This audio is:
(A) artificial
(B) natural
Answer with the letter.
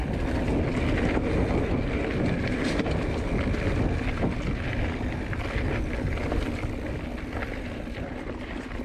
B